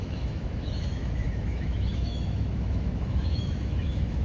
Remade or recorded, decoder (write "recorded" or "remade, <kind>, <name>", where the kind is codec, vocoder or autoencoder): remade, autoencoder, DAC-VAE